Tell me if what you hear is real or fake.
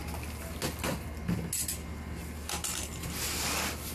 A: real